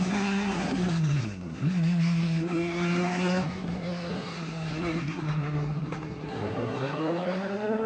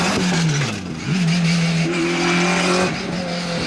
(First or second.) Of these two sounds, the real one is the second